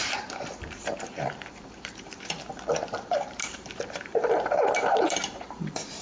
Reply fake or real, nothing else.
fake